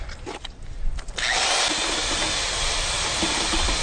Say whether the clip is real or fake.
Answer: real